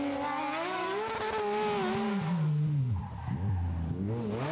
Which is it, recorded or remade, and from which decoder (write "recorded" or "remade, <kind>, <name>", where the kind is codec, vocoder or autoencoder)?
recorded